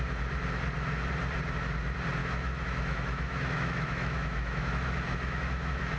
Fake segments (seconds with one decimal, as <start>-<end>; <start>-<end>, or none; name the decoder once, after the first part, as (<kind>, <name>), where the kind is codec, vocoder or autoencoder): 2.2-6.0 (autoencoder, DAC-VAE)